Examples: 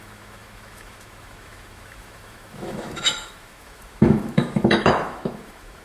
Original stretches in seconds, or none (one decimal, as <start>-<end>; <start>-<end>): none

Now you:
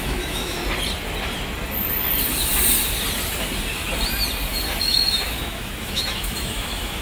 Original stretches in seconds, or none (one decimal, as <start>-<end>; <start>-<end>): 0.6-4.8

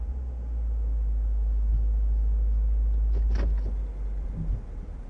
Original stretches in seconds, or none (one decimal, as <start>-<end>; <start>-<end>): 0.0-5.1

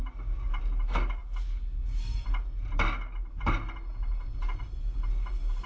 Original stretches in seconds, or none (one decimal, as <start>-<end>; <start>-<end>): 0.0-5.7

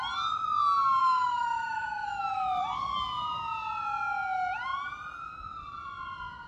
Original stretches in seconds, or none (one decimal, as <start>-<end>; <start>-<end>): 0.0-1.0; 2.5-6.5

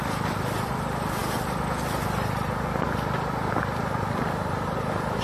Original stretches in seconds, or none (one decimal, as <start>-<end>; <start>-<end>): 0.0-5.2

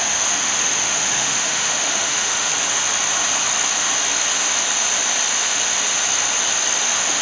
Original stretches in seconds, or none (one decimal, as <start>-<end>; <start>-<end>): 2.5-6.8